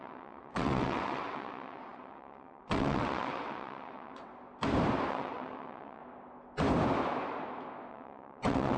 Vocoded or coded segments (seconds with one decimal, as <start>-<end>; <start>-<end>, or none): 0.0-4.3; 5.1-6.0; 7.9-8.8